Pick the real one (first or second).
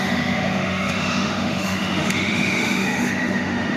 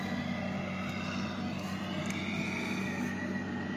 second